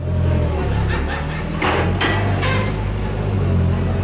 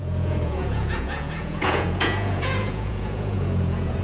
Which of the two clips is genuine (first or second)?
first